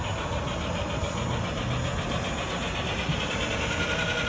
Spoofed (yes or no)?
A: no